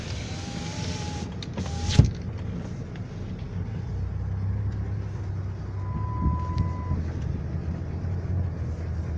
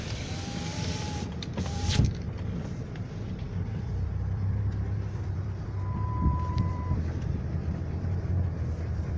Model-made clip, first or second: second